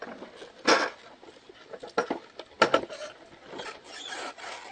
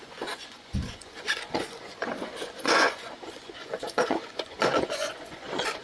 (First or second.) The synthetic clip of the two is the second